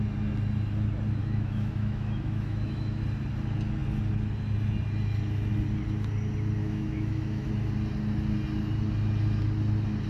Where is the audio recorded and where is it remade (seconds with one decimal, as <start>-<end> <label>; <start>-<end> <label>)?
0.0-1.2 recorded; 1.2-3.0 remade; 3.0-6.6 recorded; 6.6-7.5 remade; 7.5-10.1 recorded